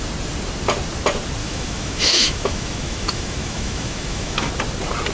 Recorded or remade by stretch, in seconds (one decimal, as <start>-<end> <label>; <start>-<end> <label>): 0.0-1.4 recorded; 1.4-4.5 remade; 4.5-5.1 recorded